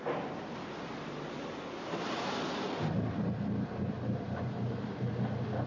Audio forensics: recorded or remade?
recorded